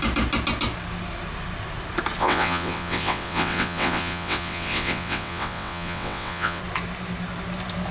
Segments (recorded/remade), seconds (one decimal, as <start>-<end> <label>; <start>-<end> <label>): 0.0-2.2 recorded; 2.2-6.6 remade; 6.6-7.9 recorded